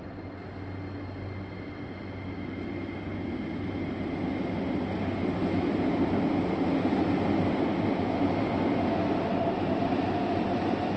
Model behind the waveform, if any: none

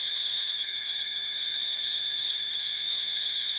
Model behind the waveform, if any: autoencoder, DAC-VAE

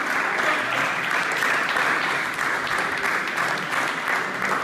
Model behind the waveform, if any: none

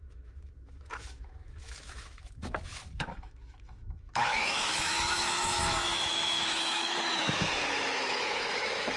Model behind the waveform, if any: autoencoder, DAC-VAE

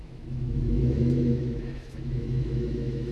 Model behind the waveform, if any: autoencoder, DAC-VAE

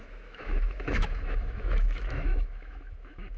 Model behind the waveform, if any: autoencoder, DAC-VAE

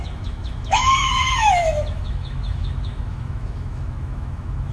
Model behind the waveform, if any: autoencoder, DAC-VAE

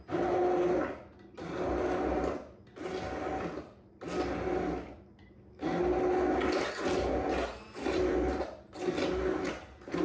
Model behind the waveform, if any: none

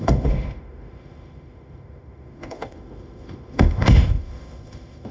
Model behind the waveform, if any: autoencoder, DAC-VAE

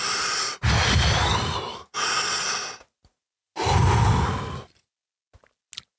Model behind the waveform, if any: none